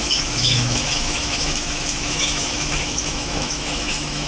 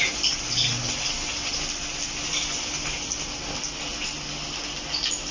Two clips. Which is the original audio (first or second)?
second